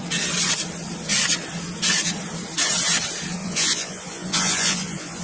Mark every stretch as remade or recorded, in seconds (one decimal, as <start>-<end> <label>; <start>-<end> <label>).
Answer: 0.0-3.4 recorded; 3.4-5.2 remade